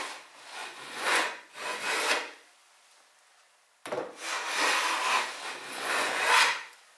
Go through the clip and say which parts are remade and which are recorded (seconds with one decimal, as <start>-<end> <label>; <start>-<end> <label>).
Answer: 0.0-0.6 recorded; 0.6-1.8 remade; 1.8-5.7 recorded; 5.7-6.2 remade; 6.2-7.0 recorded

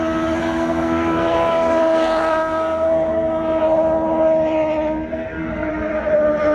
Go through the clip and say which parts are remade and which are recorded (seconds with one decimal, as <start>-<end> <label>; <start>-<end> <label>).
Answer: 0.0-0.4 recorded; 0.4-3.6 remade; 3.6-5.1 recorded; 5.1-5.7 remade; 5.7-6.5 recorded

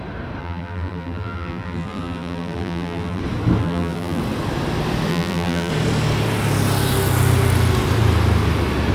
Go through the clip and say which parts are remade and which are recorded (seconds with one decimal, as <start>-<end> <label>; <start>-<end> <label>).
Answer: 0.0-0.4 recorded; 0.4-3.2 remade; 3.2-3.6 recorded; 3.6-4.2 remade; 4.2-5.1 recorded; 5.1-5.7 remade; 5.7-8.9 recorded

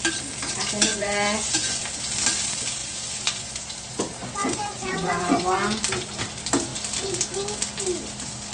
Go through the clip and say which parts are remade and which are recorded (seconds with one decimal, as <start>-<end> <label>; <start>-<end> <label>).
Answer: 0.0-0.9 recorded; 0.9-1.8 remade; 1.8-2.8 recorded; 2.8-3.5 remade; 3.5-4.4 recorded; 4.4-5.4 remade; 5.4-8.5 recorded

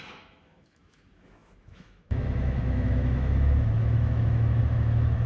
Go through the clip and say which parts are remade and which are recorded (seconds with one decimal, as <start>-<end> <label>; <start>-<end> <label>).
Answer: 0.0-5.3 remade

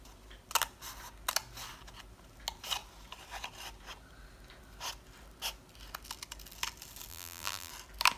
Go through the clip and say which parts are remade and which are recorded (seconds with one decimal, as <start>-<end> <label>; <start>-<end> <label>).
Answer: 0.0-7.1 recorded; 7.1-7.7 remade; 7.7-8.2 recorded